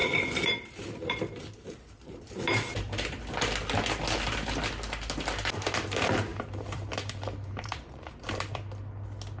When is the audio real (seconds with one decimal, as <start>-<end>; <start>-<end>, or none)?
3.2-6.3; 8.4-9.4